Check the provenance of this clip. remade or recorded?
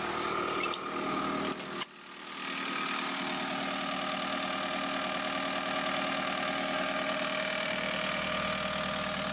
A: recorded